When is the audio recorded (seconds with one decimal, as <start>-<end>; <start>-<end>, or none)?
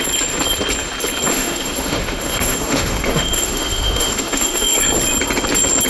0.0-1.3; 4.8-5.9